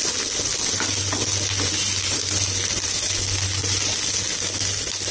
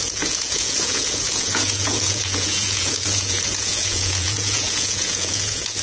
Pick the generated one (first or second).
second